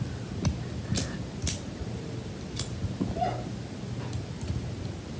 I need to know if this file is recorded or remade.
recorded